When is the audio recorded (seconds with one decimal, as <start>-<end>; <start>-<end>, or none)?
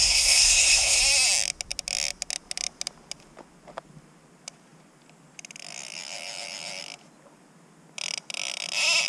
1.0-9.1